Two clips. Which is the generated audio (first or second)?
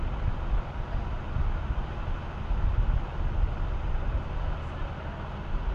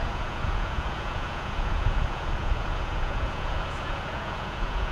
second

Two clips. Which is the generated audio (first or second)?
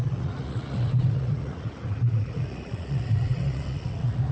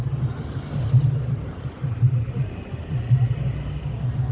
first